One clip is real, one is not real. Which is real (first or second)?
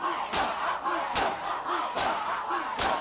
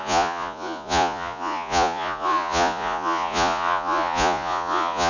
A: first